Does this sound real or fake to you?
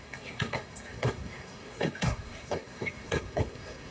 fake